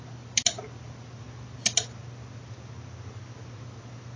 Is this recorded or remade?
recorded